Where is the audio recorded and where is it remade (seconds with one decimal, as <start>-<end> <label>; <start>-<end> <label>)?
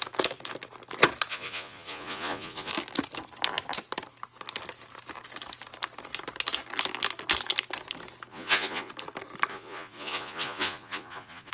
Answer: 0.0-1.3 recorded; 1.3-2.7 remade; 2.7-8.3 recorded; 8.3-8.9 remade; 8.9-9.5 recorded; 9.5-11.5 remade